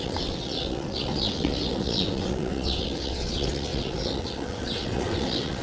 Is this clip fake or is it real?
fake